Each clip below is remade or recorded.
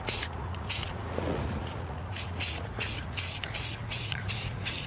remade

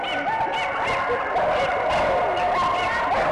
recorded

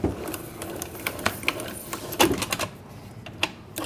recorded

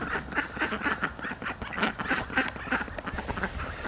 recorded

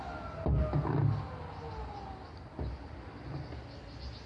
recorded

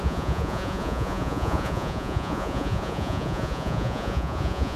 remade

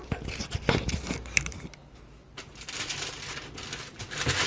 recorded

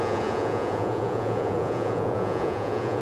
remade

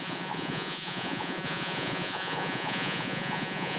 remade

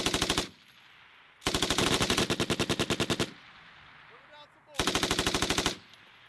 recorded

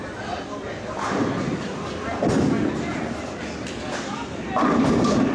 recorded